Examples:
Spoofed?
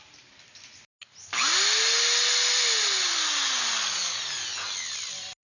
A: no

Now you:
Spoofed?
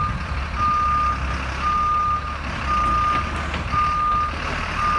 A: no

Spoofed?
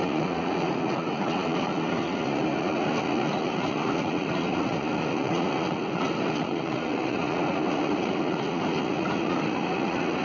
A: yes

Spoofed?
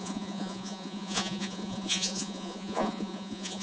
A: yes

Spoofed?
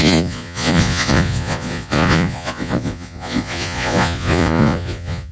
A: yes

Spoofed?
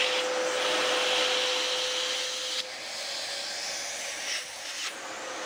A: no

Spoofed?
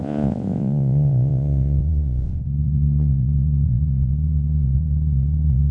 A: yes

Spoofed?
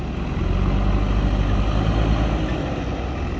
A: no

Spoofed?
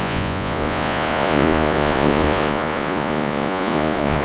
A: yes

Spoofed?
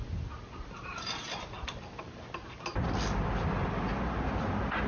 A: no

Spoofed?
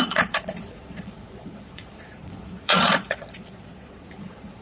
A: yes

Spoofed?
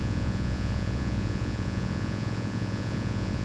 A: yes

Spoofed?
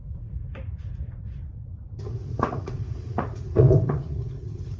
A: yes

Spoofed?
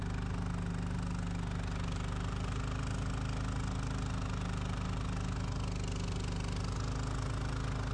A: no